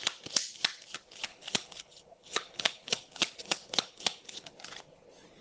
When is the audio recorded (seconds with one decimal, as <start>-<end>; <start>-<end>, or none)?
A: 0.0-1.3; 4.5-5.4